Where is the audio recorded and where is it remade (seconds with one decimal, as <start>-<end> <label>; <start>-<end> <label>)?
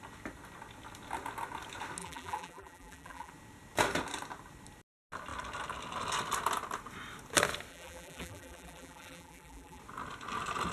0.0-2.0 recorded; 2.0-3.3 remade; 3.3-7.7 recorded; 7.7-9.8 remade; 9.8-10.7 recorded